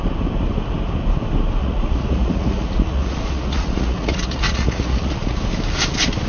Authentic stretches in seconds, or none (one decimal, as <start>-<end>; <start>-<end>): 0.0-1.6; 5.4-6.3